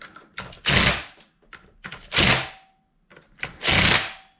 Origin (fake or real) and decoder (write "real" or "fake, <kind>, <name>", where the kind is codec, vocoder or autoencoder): real